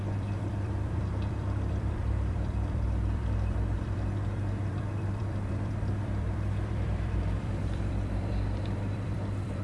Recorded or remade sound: remade